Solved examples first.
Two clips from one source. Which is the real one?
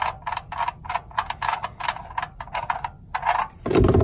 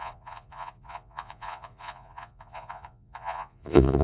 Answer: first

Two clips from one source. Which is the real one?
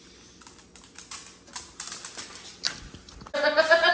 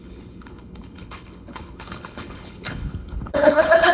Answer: first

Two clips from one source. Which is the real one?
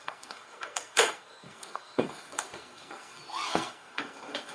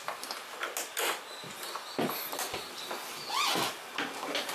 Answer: second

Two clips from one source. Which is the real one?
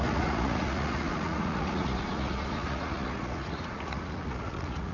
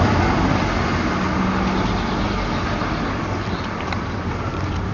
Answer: second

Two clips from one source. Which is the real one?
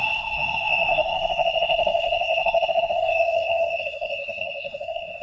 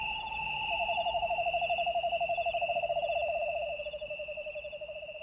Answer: second